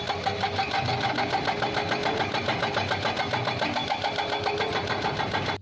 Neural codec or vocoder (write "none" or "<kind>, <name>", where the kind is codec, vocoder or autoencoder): none